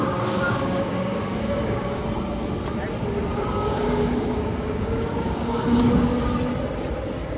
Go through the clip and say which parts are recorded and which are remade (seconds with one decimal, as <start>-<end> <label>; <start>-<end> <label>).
0.0-2.0 remade; 2.0-3.4 recorded; 3.4-6.1 remade; 6.1-7.4 recorded